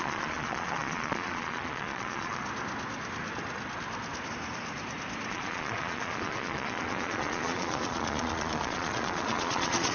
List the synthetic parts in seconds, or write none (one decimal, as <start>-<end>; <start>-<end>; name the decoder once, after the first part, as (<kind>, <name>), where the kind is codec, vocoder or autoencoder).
0.0-2.4 (vocoder, Vocos); 5.3-9.9